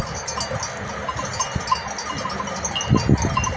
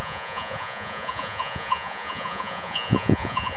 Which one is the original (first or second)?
first